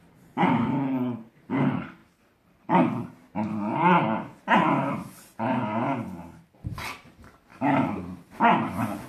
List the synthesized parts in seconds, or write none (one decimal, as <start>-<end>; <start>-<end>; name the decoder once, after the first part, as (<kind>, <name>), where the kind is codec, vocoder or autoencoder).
none

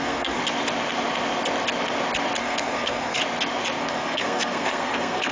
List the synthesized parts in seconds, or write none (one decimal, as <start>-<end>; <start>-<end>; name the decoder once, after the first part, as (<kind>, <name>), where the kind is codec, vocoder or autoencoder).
0.0-0.4 (codec, SNAC); 2.4-3.2; 3.8-5.3

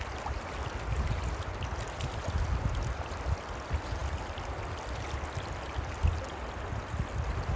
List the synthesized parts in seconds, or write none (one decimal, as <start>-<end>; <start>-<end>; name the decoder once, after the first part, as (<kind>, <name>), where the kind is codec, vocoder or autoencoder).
none

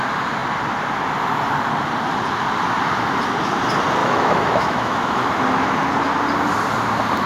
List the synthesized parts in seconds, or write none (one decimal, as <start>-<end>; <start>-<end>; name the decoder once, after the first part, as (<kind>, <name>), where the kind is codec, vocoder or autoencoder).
4.0-5.4 (autoencoder, DAC-VAE)

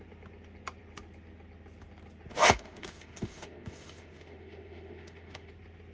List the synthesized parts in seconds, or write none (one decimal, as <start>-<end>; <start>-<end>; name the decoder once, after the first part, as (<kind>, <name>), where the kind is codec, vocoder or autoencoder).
2.3-5.5 (autoencoder, DAC-VAE)